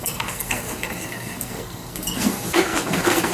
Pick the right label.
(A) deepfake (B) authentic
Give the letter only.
A